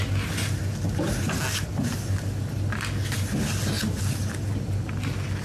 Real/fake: real